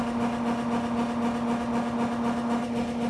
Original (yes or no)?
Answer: yes